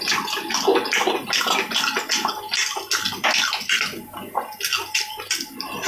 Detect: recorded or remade recorded